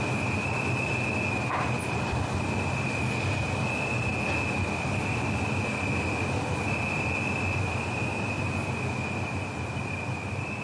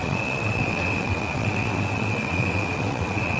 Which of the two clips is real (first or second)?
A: first